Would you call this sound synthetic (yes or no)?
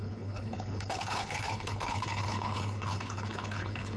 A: yes